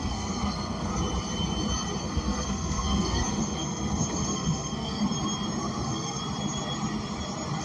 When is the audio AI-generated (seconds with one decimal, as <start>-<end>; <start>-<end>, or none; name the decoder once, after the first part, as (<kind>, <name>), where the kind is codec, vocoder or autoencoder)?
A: 0.0-0.9 (codec, SNAC); 2.0-5.0; 5.6-6.2